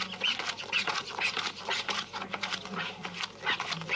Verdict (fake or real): real